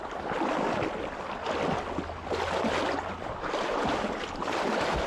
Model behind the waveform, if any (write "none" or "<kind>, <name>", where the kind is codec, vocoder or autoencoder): none